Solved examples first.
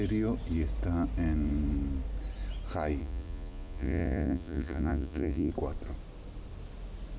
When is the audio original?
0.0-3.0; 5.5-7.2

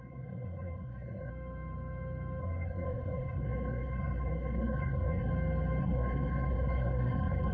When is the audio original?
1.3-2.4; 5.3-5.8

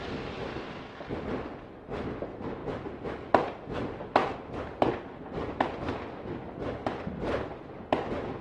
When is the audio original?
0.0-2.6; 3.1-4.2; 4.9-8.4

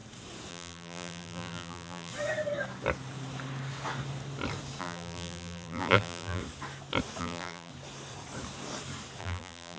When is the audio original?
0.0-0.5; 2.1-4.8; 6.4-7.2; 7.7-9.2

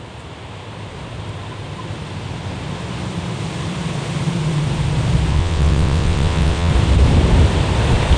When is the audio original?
0.0-5.3; 6.7-8.2

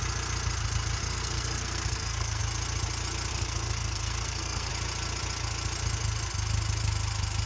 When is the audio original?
0.0-1.0; 2.4-3.3; 4.7-7.5